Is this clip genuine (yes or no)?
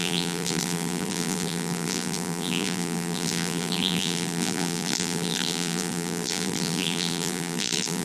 no